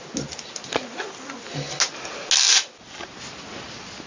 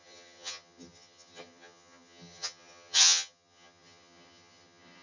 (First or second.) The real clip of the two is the first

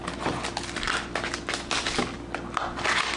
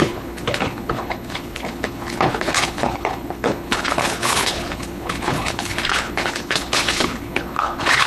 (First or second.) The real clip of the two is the first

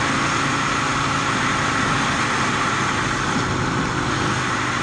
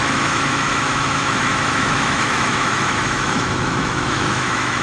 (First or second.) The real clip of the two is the first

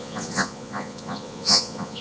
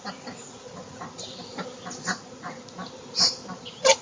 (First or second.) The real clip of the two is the second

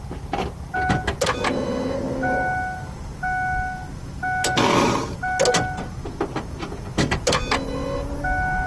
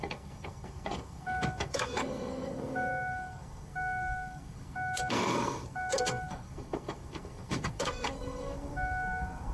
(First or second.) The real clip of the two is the first